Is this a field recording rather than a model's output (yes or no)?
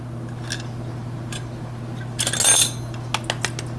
yes